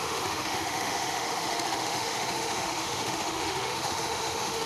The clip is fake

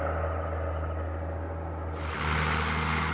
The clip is real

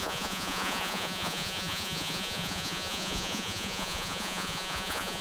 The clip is fake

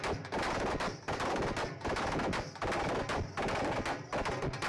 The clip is real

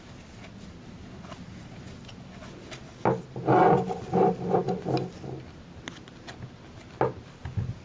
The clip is real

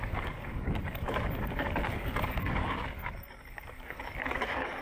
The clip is fake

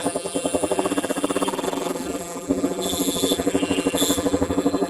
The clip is fake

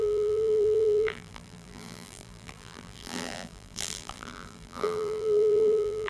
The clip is fake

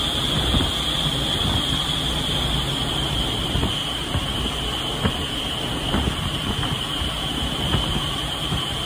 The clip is real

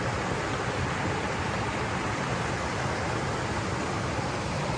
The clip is real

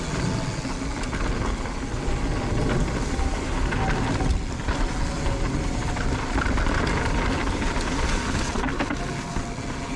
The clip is real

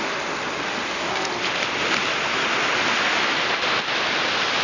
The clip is real